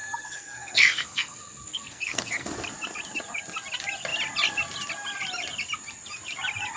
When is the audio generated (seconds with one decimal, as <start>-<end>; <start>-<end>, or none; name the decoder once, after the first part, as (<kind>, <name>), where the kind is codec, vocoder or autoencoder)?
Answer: 0.0-2.5 (codec, SNAC)